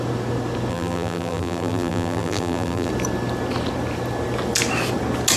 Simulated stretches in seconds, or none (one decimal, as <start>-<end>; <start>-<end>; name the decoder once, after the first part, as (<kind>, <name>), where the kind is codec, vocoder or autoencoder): 0.7-2.9 (vocoder, BigVGAN v2)